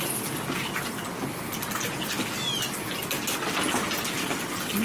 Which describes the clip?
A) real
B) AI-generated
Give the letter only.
A